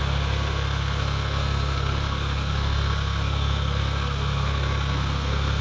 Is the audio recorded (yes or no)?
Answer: no